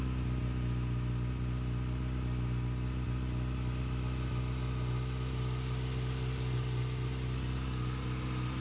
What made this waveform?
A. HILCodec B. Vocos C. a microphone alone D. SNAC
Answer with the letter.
C